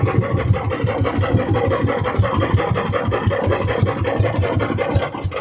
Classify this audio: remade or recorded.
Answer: recorded